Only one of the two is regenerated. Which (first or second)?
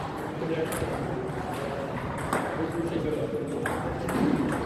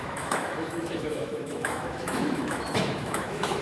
second